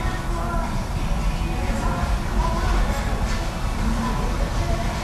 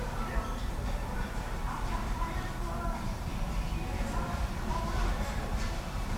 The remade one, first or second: second